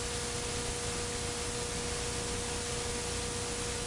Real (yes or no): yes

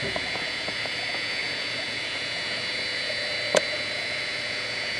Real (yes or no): no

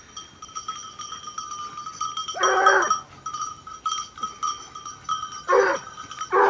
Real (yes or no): yes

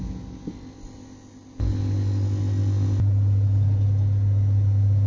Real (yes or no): yes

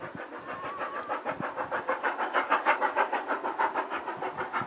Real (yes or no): yes